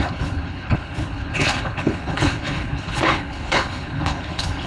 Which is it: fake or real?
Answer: fake